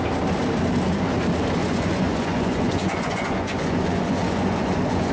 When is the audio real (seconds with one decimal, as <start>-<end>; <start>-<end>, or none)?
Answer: 0.0-1.6